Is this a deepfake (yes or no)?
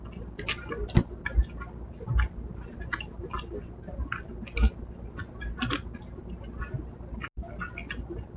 no